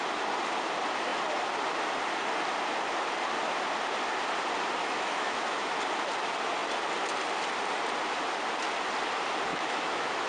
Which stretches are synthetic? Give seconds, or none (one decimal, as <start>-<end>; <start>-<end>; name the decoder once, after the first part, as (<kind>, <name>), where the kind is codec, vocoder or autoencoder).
4.8-5.7 (autoencoder, DAC-VAE); 9.5-10.3